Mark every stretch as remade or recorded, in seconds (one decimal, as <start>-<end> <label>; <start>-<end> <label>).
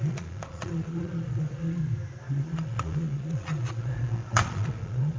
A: 0.0-1.8 remade; 1.8-2.3 recorded; 2.3-5.2 remade